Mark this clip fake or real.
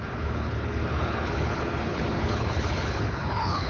fake